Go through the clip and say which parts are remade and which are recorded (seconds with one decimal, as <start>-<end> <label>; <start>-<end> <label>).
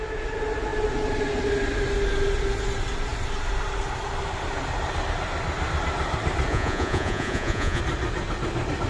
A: 0.0-6.5 recorded; 6.5-7.8 remade; 7.8-8.9 recorded